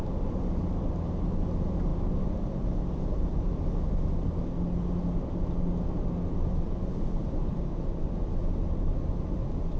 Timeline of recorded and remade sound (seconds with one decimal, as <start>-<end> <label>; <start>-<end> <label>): 0.0-9.8 recorded